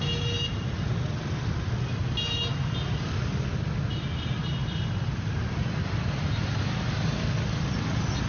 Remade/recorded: recorded